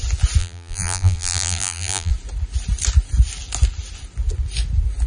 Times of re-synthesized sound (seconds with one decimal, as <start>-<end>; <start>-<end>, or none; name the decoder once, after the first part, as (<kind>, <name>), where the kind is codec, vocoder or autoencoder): 0.4-2.1 (vocoder, BigVGAN v2)